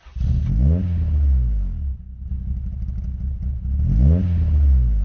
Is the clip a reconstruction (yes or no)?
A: no